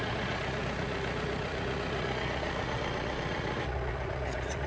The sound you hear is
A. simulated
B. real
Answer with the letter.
A